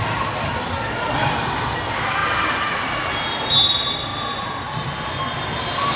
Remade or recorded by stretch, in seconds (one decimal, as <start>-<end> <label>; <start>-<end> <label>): 0.0-4.1 recorded; 4.1-4.7 remade; 4.7-6.0 recorded